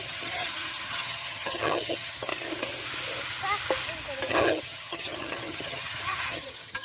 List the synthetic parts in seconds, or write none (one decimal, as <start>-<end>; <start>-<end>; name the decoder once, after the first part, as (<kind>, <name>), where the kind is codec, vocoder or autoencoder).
0.0-2.3 (vocoder, HiFi-GAN); 4.3-6.8

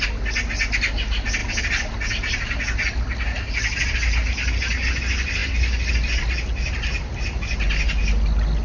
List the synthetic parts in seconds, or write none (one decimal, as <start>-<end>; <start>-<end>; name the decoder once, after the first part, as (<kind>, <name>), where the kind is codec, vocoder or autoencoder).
none

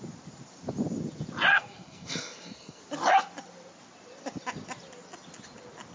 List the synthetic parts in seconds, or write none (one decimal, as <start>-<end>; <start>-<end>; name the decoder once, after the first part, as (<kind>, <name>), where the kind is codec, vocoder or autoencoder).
1.5-2.8 (codec, SNAC)

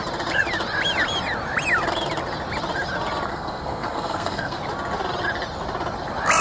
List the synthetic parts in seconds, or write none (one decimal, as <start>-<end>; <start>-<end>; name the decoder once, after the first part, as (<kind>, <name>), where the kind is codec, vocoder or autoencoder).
3.3-4.6 (codec, SNAC)